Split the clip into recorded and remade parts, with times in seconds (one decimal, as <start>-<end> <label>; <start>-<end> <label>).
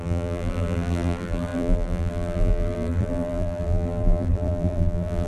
0.0-5.3 remade